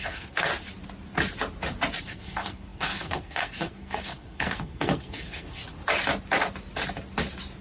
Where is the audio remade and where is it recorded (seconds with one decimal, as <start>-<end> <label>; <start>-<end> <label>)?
0.0-0.5 remade; 0.5-2.0 recorded; 2.0-5.6 remade; 5.6-7.6 recorded